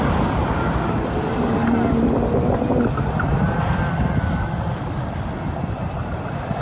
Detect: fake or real real